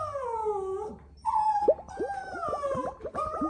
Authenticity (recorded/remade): recorded